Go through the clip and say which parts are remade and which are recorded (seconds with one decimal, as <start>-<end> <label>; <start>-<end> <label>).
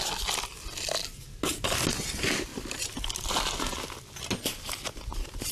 0.0-5.5 recorded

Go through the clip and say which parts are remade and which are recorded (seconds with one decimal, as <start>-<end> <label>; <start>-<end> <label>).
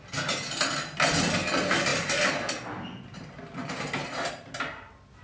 0.0-3.6 recorded; 3.6-4.3 remade; 4.3-5.2 recorded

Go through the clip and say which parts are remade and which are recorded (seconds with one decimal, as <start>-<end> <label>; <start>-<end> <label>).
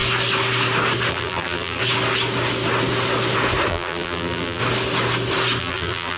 0.0-1.1 recorded; 1.1-1.8 remade; 1.8-3.7 recorded; 3.7-4.6 remade; 4.6-5.6 recorded; 5.6-6.2 remade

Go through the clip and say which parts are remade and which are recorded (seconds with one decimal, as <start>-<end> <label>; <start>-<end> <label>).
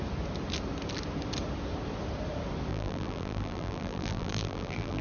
0.0-2.7 recorded; 2.7-5.0 remade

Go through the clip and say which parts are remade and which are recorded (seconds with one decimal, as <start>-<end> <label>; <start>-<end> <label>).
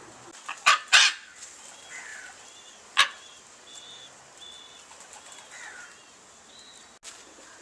0.0-2.1 recorded; 2.1-3.4 remade; 3.4-7.6 recorded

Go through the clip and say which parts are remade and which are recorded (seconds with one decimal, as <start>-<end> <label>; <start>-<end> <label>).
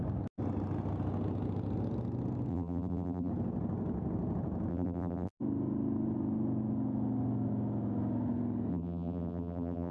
0.0-2.5 recorded; 2.5-3.3 remade; 3.3-4.7 recorded; 4.7-5.3 remade; 5.3-8.7 recorded; 8.7-9.9 remade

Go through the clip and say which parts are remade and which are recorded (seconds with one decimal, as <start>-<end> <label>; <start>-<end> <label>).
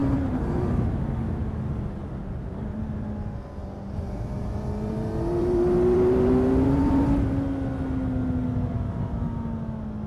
0.0-0.7 remade; 0.7-3.6 recorded; 3.6-7.1 remade; 7.1-10.1 recorded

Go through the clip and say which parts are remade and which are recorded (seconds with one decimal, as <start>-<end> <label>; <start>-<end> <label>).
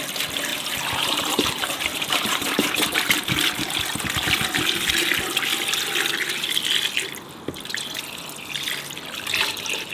0.0-0.5 recorded; 0.5-3.4 remade; 3.4-9.9 recorded